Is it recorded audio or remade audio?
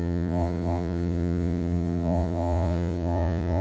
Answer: remade